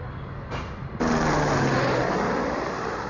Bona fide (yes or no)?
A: yes